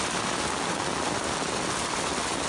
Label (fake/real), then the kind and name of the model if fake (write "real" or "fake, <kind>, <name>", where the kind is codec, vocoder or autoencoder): real